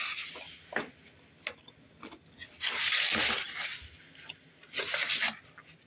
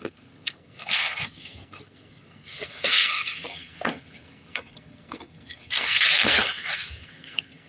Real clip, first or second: first